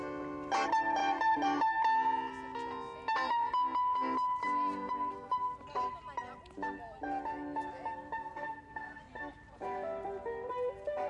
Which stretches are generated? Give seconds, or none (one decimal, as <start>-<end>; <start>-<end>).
8.2-9.0